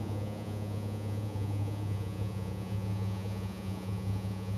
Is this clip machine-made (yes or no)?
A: yes